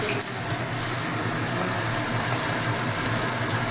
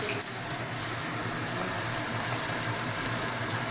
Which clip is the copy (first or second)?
second